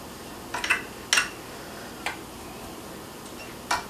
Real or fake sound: real